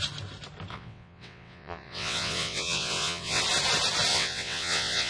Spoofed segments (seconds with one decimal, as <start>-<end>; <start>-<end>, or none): 0.7-3.4; 4.1-5.1